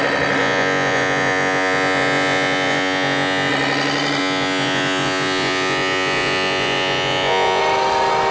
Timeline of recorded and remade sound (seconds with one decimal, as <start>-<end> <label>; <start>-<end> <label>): 0.0-0.4 recorded; 0.4-3.5 remade; 3.5-4.2 recorded; 4.2-7.6 remade; 7.6-8.3 recorded